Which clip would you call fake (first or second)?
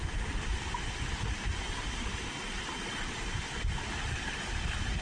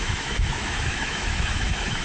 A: second